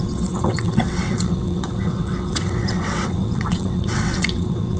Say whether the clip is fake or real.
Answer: fake